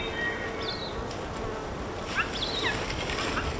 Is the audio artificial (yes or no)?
no